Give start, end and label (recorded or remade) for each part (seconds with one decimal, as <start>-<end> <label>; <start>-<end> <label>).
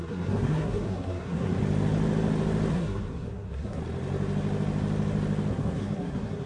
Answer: 0.0-1.6 remade; 1.6-2.7 recorded; 2.7-3.8 remade; 3.8-5.5 recorded; 5.5-6.5 remade